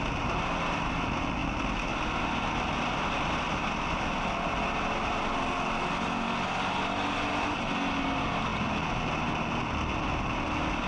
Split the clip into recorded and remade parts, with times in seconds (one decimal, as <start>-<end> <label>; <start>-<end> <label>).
0.0-10.9 recorded